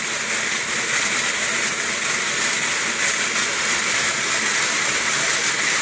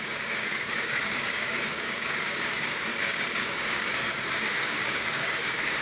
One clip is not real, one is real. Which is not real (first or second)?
second